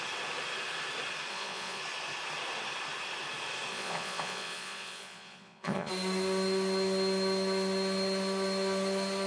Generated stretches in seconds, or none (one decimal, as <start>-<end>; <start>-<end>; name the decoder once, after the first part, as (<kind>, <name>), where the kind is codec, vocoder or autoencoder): 1.3-1.8 (vocoder, Vocos); 3.7-5.9